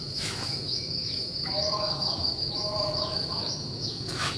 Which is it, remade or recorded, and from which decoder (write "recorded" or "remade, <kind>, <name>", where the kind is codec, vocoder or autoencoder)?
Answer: remade, autoencoder, DAC-VAE